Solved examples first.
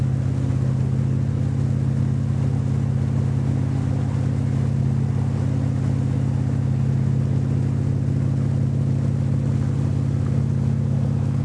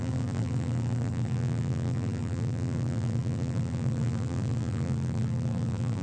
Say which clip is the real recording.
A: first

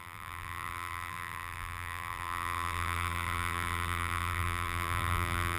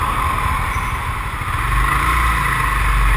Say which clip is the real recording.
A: second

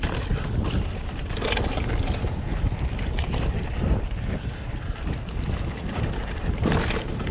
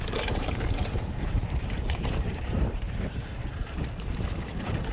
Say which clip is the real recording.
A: first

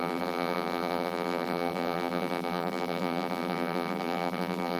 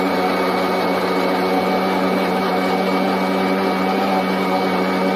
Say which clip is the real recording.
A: second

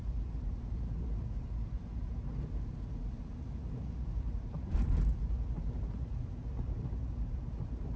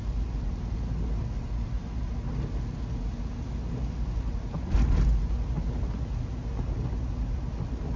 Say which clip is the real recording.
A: second